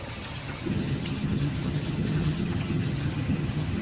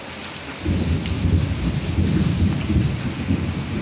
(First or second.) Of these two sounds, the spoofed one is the first